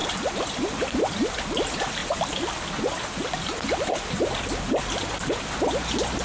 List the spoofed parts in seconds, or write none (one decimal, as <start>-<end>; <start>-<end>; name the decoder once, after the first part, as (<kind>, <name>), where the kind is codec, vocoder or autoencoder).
0.0-1.3 (vocoder, BigVGAN v2); 2.0-5.4